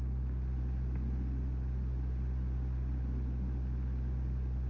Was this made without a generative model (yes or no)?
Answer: yes